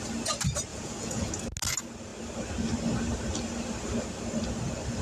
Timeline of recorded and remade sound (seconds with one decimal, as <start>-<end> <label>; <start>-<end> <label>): 0.0-0.7 recorded; 0.7-1.3 remade; 1.3-5.0 recorded

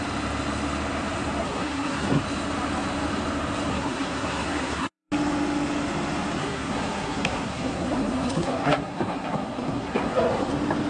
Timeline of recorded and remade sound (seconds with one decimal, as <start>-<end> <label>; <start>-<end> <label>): 0.0-1.4 recorded; 1.4-2.2 remade; 2.2-3.7 recorded; 3.7-5.1 remade; 5.1-6.4 recorded; 6.4-10.5 remade; 10.5-10.9 recorded